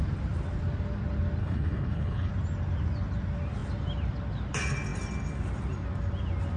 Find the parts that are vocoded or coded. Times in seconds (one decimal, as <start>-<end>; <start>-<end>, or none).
1.4-2.3